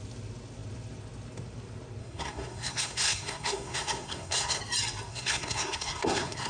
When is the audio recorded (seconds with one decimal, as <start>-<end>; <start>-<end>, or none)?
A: 0.0-2.0; 4.6-5.1